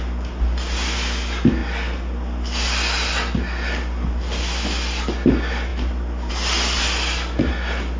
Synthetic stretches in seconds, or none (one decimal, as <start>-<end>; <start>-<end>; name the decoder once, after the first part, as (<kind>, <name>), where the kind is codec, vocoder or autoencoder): none